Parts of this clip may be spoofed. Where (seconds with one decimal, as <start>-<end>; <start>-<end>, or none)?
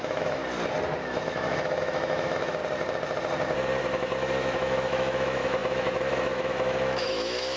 0.0-0.4; 1.0-2.6; 3.8-7.6